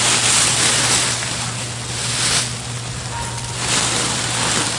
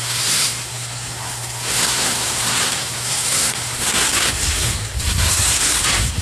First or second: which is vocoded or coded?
second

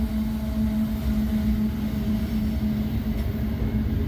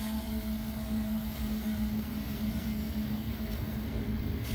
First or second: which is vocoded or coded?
second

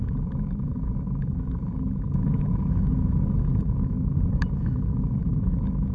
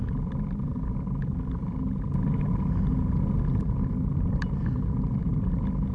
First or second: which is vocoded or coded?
first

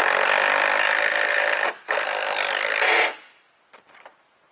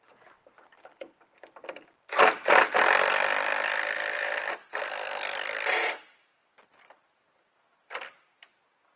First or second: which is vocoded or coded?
second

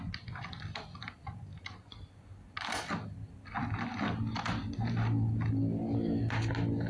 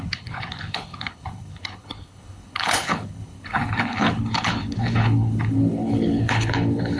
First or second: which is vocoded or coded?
second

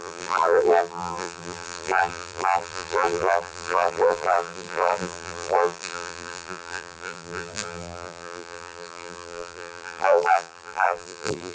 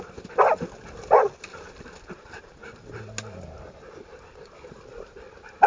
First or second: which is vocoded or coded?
first